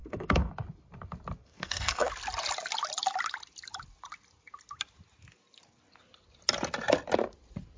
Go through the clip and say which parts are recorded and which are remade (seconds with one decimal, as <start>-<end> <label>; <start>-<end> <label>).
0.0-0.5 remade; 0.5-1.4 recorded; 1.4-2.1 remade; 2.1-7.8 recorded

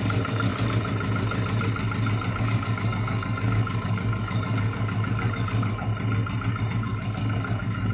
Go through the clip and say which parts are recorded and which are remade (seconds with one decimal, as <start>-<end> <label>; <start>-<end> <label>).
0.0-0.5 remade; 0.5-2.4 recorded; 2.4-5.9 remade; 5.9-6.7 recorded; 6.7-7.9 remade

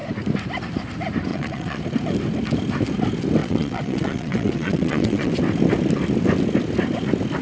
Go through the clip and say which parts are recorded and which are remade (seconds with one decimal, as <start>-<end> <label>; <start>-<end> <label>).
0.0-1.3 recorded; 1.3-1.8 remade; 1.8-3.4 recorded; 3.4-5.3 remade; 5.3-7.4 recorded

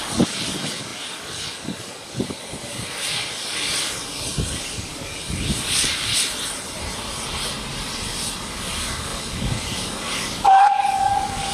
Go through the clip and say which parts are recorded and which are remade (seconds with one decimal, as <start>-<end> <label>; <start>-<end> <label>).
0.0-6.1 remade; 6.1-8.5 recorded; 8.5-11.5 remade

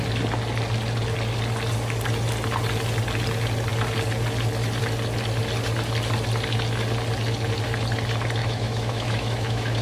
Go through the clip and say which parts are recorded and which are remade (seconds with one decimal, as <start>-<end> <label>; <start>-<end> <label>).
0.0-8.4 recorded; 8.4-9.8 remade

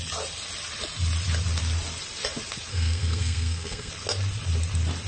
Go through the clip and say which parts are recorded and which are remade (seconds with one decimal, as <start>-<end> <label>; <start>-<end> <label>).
0.0-2.7 recorded; 2.7-3.9 remade; 3.9-5.1 recorded

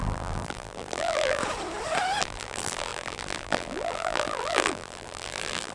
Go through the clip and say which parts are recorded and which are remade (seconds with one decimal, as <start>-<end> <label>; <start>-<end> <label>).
0.0-1.4 remade; 1.4-2.2 recorded; 2.2-5.7 remade

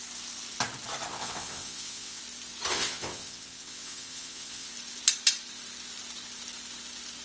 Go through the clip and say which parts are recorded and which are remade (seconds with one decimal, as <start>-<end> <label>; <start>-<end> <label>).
0.0-1.1 recorded; 1.1-2.2 remade; 2.2-2.7 recorded; 2.7-4.7 remade; 4.7-7.2 recorded